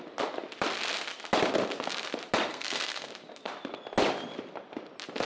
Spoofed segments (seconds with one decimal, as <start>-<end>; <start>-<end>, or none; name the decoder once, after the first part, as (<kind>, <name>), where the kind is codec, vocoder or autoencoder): 2.5-3.1 (codec, SNAC)